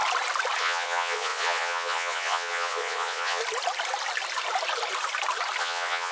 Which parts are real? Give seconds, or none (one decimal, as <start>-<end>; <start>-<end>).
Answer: 0.0-0.6; 3.4-5.6